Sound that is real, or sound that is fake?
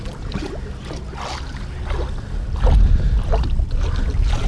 real